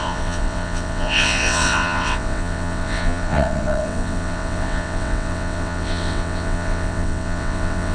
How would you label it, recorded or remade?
remade